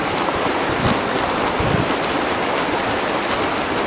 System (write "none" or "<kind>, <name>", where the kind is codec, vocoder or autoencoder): none